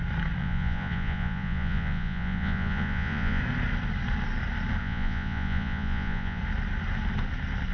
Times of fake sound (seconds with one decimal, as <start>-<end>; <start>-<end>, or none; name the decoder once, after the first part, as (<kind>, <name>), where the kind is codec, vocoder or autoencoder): 0.4-3.4 (vocoder, Vocos); 4.8-6.4